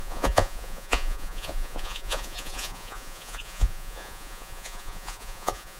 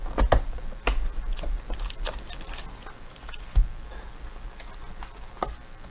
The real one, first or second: second